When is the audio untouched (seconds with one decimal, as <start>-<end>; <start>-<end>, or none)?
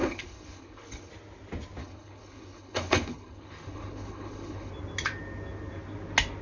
1.1-1.8; 4.7-6.4